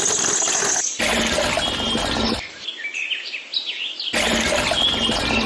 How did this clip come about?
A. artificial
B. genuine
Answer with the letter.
B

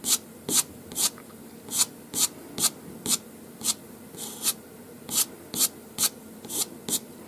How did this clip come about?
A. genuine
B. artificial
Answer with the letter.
A